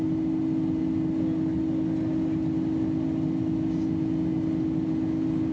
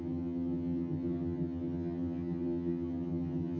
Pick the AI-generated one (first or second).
second